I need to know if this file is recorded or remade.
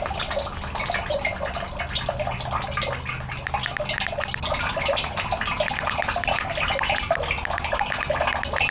recorded